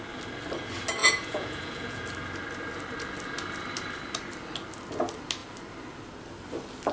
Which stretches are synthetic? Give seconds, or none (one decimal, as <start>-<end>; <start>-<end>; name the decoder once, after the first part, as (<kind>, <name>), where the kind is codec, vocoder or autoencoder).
1.0-2.0 (vocoder, Vocos)